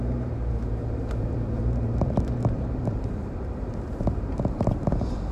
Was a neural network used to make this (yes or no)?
yes